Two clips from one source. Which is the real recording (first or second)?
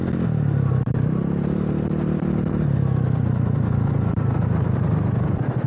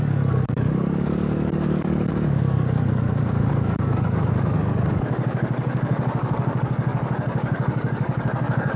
first